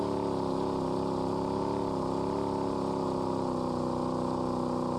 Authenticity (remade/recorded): recorded